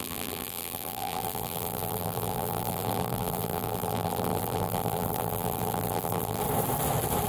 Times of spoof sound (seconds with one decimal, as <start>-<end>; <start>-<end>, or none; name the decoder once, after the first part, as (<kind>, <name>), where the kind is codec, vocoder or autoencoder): 0.0-6.4 (vocoder, BigVGAN v2)